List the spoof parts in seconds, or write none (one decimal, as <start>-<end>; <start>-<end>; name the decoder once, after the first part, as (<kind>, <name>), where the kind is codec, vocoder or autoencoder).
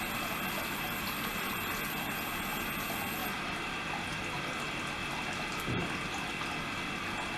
1.3-2.1 (vocoder, BigVGAN v2); 3.2-4.2; 5.0-6.5